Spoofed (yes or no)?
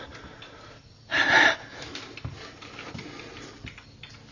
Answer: no